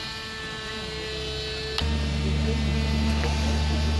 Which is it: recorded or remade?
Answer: recorded